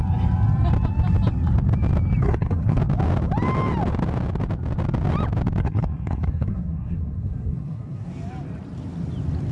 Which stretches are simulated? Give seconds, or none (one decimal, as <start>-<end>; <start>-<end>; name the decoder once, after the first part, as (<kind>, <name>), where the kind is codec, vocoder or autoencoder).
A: 2.2-2.8 (codec, SNAC); 5.6-8.1